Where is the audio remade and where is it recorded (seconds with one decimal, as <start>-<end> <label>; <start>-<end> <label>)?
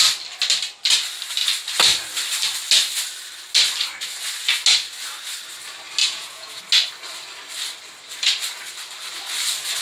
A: 0.0-6.0 recorded; 6.0-6.6 remade; 6.6-9.8 recorded